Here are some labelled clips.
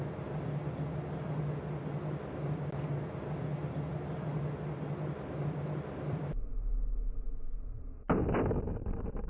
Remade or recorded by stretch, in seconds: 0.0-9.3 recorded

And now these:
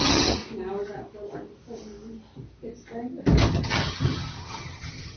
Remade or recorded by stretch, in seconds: 0.0-0.4 remade; 0.4-3.5 recorded; 3.5-5.2 remade

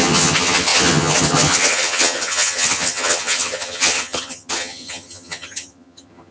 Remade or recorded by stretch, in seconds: 0.0-6.3 remade

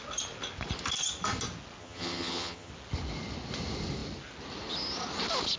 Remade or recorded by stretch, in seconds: 0.0-1.8 recorded; 1.8-2.7 remade; 2.7-5.6 recorded

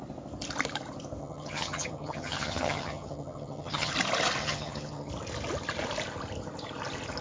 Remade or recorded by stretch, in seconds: 0.0-1.2 recorded; 1.2-3.9 remade; 3.9-4.4 recorded; 4.4-5.1 remade; 5.1-7.2 recorded

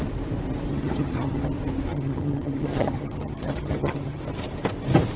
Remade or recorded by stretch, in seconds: 0.0-0.7 recorded; 0.7-1.5 remade; 1.5-1.9 recorded; 1.9-4.2 remade; 4.2-5.2 recorded